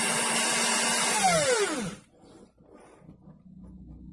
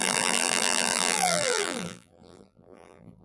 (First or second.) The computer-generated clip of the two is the second